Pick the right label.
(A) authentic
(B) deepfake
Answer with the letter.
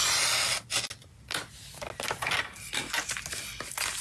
A